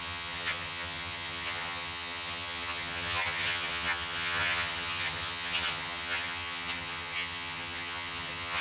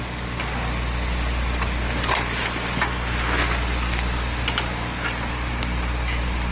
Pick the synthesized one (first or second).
first